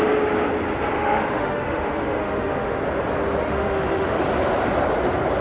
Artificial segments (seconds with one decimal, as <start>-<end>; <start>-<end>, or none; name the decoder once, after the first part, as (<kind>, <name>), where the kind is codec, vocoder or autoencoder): 0.9-2.8 (autoencoder, DAC-VAE); 3.4-4.2